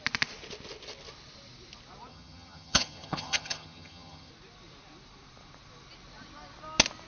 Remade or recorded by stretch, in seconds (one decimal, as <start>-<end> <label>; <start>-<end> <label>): 0.0-2.1 recorded; 2.1-4.3 remade; 4.3-7.1 recorded